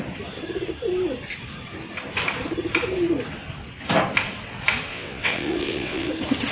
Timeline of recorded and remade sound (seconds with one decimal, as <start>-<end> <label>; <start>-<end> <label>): 0.0-4.9 recorded; 4.9-6.1 remade; 6.1-6.5 recorded